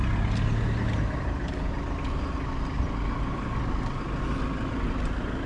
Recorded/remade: recorded